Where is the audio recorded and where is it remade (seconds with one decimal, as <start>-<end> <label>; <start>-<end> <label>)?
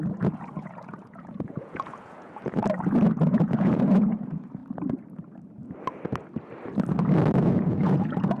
0.0-2.6 remade; 2.6-3.3 recorded; 3.3-4.6 remade; 4.6-7.4 recorded; 7.4-8.4 remade